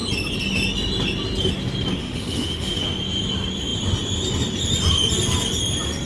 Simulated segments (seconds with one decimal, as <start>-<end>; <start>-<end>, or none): 2.0-2.8